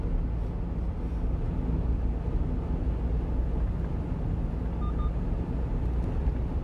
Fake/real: real